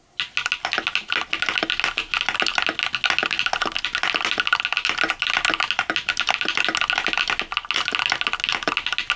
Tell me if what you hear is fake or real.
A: real